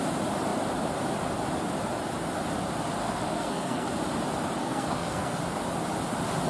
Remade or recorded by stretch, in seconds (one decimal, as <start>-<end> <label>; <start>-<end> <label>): 0.0-3.0 recorded; 3.0-4.0 remade; 4.0-4.6 recorded; 4.6-5.4 remade; 5.4-6.5 recorded